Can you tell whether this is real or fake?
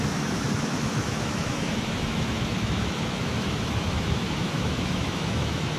fake